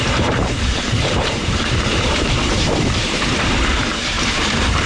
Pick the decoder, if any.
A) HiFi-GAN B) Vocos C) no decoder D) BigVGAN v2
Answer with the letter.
D